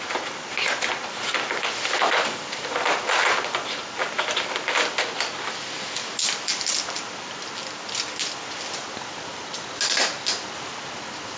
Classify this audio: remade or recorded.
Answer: recorded